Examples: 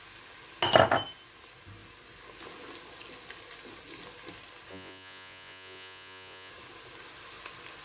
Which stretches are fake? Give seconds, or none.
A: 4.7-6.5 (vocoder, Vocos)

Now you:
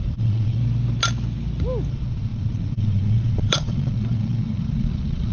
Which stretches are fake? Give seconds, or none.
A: 0.0-0.6 (vocoder, Vocos); 1.9-5.3

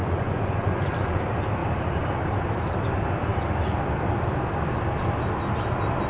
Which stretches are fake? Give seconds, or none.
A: 0.0-1.2 (vocoder, Vocos)

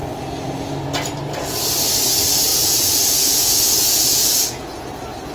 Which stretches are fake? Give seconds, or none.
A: 2.5-4.8 (vocoder, Vocos)

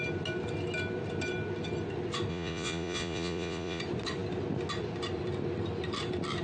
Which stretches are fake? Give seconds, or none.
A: 2.3-3.8 (vocoder, Vocos)

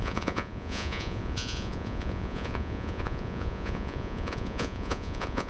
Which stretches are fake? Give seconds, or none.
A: 0.0-5.5 (vocoder, Vocos)